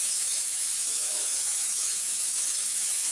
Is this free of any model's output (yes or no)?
no